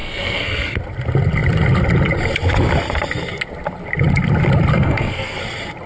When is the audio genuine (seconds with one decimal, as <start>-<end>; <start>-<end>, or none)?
0.8-4.7; 5.4-5.9